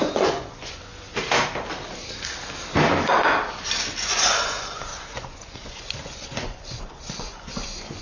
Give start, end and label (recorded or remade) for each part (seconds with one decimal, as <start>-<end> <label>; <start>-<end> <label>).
0.0-1.1 remade; 1.1-4.0 recorded; 4.0-8.0 remade